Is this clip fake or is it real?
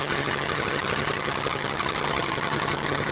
fake